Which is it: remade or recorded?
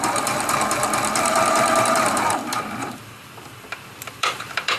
remade